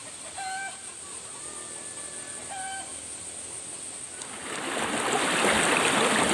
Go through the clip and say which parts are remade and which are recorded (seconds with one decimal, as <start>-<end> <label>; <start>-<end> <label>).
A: 0.0-6.3 recorded